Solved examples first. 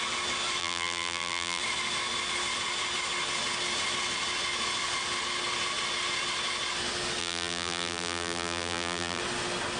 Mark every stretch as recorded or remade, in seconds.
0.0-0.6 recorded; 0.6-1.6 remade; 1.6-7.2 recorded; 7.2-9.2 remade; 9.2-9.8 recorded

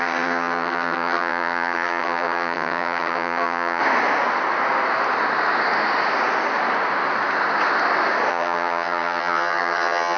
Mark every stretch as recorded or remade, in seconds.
0.0-3.8 remade; 3.8-8.3 recorded; 8.3-10.2 remade

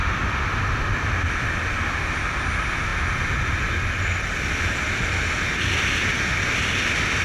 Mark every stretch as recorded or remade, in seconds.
0.0-7.2 recorded

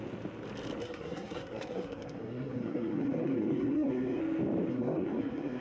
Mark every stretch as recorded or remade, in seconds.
0.0-0.8 recorded; 0.8-4.2 remade; 4.2-4.7 recorded; 4.7-5.6 remade